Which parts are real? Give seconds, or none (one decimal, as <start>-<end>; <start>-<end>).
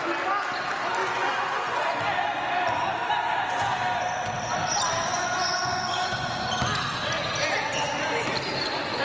0.0-1.0; 2.0-5.1; 6.5-9.0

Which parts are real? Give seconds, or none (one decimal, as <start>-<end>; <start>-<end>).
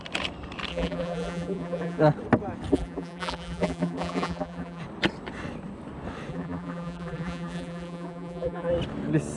0.0-0.7; 2.0-2.7; 4.8-6.3; 8.7-9.4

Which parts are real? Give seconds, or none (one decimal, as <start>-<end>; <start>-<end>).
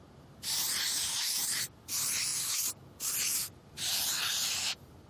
2.3-3.1